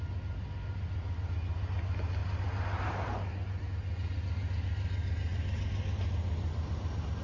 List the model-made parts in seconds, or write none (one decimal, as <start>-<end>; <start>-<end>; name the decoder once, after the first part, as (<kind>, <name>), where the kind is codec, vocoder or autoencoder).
none